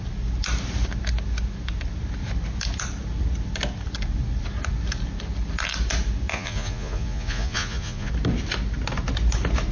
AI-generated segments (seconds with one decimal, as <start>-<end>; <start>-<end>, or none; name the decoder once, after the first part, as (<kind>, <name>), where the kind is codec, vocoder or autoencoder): 6.3-8.1 (vocoder, Vocos)

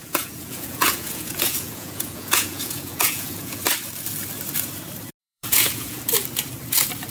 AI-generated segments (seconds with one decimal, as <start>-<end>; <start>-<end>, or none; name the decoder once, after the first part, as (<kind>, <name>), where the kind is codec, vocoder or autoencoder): 0.0-3.6 (vocoder, Vocos); 5.2-6.0

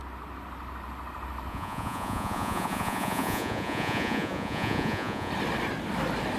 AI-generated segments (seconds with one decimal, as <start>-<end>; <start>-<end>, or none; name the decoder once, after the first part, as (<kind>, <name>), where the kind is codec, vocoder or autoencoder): 1.5-5.3 (vocoder, Vocos)

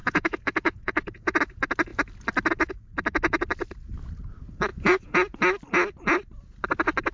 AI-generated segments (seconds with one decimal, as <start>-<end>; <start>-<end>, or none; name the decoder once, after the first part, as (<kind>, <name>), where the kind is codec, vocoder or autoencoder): 0.0-1.4 (vocoder, Vocos); 4.7-5.4

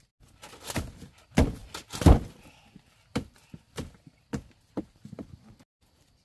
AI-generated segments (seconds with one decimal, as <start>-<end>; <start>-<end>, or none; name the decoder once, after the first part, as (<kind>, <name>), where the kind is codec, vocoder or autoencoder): none

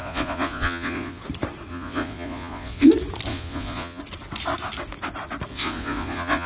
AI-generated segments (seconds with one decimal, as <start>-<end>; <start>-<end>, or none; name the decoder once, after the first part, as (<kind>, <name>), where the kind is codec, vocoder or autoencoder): 0.0-1.2 (vocoder, Vocos); 1.7-2.9; 3.3-4.0; 5.5-6.5